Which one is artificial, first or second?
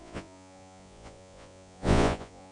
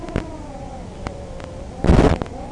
first